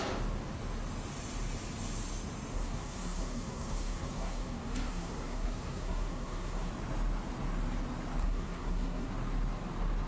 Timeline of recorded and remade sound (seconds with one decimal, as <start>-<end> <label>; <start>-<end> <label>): 0.0-2.5 recorded; 2.5-6.7 remade; 6.7-8.2 recorded; 8.2-9.1 remade; 9.1-10.1 recorded